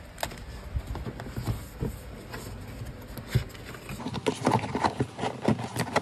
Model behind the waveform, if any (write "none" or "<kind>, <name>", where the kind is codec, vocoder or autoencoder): none